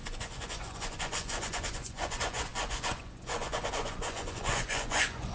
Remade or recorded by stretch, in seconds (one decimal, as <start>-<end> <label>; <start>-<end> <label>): 0.0-5.3 remade